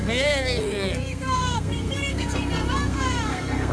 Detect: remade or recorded remade